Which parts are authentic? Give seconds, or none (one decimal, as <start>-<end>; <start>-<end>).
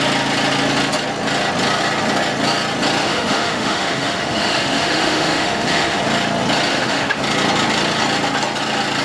0.0-3.0; 6.0-6.7; 7.2-9.0